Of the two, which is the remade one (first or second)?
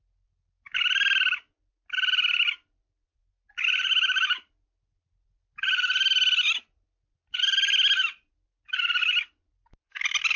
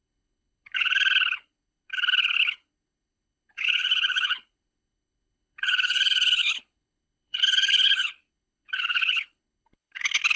second